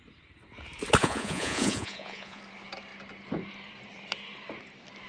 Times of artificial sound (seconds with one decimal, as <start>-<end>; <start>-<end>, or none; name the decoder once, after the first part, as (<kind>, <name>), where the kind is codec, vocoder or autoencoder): 1.0-2.4 (vocoder, Vocos)